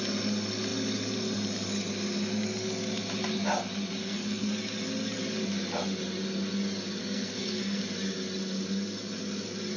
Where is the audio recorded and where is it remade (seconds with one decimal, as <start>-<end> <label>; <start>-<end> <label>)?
0.0-4.0 recorded; 4.0-4.5 remade; 4.5-7.0 recorded; 7.0-7.8 remade; 7.8-9.8 recorded